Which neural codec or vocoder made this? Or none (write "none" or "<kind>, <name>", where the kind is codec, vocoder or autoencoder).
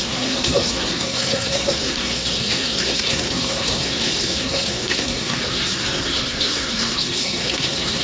codec, SNAC